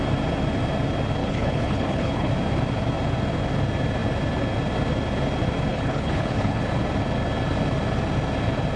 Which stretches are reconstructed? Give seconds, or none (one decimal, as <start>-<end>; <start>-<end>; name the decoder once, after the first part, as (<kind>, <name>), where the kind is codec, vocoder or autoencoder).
1.2-2.3 (codec, HILCodec); 5.7-6.6